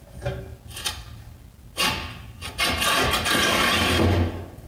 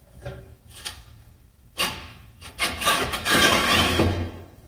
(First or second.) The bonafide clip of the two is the first